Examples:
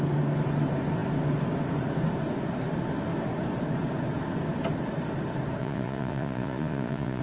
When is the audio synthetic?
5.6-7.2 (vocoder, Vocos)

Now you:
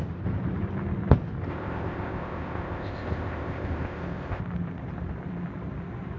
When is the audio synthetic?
1.5-4.4 (codec, ZipCodec)

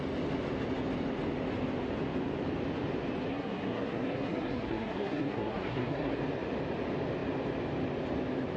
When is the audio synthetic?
3.3-6.2 (codec, SNAC)

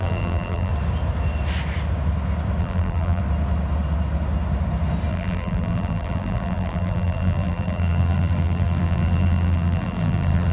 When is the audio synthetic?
0.0-0.7 (vocoder, BigVGAN v2); 2.6-3.2; 5.1-10.5